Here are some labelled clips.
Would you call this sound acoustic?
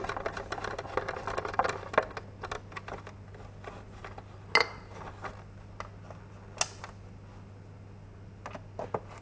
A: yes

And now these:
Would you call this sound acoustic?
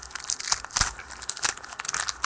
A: yes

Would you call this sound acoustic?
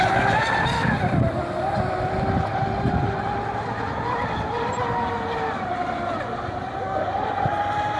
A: yes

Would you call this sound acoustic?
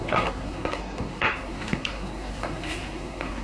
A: no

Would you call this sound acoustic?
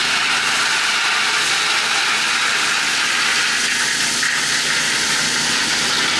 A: yes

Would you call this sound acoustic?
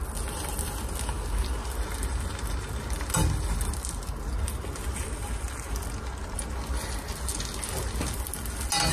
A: yes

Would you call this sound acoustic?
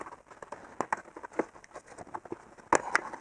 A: yes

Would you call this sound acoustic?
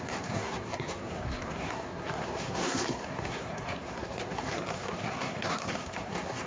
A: no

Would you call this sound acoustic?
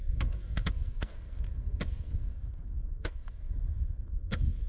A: no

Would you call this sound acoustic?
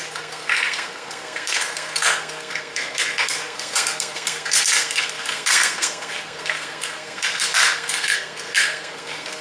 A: no